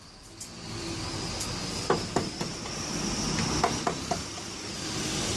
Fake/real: fake